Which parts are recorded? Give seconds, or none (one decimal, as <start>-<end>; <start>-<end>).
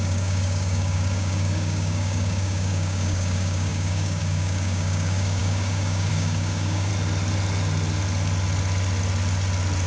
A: 6.9-9.9